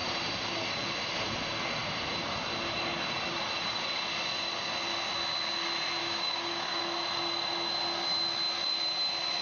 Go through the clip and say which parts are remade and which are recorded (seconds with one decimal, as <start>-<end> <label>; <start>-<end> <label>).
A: 0.0-6.0 recorded; 6.0-6.8 remade; 6.8-9.4 recorded